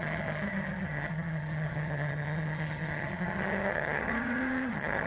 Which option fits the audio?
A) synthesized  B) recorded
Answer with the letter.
A